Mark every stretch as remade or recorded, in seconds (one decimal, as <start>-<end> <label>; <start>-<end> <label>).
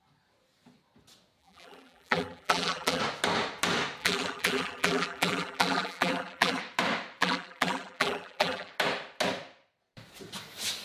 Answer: 0.0-1.4 recorded; 1.4-3.0 remade; 3.0-4.0 recorded; 4.0-6.6 remade; 6.6-7.2 recorded; 7.2-8.7 remade; 8.7-10.8 recorded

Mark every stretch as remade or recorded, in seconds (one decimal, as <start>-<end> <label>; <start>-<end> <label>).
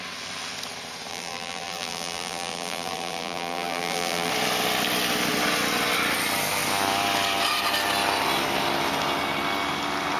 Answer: 0.0-1.1 recorded; 1.1-4.3 remade; 4.3-10.2 recorded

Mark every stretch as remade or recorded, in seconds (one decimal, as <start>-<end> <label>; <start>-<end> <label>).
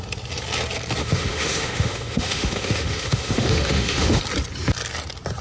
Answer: 0.0-1.0 recorded; 1.0-4.2 remade; 4.2-5.4 recorded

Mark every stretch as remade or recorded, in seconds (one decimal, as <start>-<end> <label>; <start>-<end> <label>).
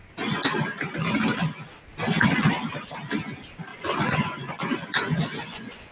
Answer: 0.0-3.7 recorded; 3.7-5.9 remade